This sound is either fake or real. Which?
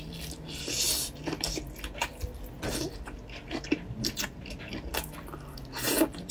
real